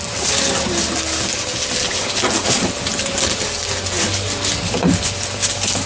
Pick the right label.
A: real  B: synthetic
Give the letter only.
A